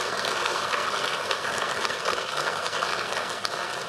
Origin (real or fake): fake